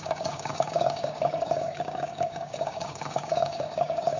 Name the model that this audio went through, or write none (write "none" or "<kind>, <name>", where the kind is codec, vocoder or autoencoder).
codec, DAC